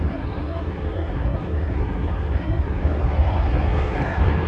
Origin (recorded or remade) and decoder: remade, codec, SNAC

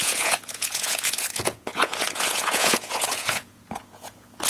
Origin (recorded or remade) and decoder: remade, vocoder, Vocos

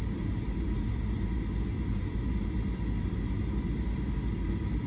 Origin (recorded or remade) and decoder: recorded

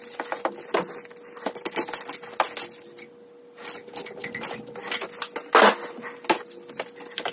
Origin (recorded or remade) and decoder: recorded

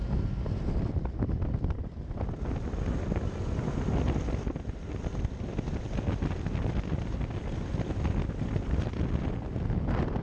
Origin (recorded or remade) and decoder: recorded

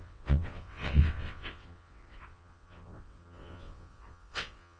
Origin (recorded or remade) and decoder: remade, vocoder, WaveNeXt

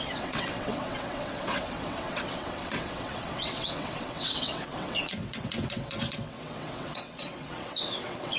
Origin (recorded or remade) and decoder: remade, vocoder, WaveNeXt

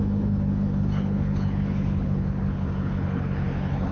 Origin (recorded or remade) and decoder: remade, codec, HILCodec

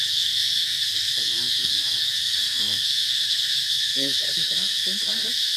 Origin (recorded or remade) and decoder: remade, codec, SNAC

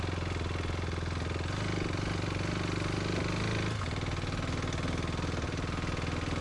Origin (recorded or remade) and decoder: recorded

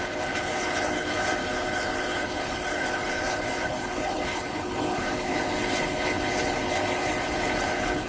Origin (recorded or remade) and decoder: remade, codec, HILCodec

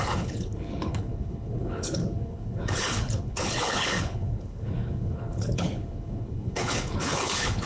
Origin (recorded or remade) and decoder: remade, codec, HILCodec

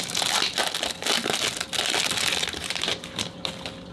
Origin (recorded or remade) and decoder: recorded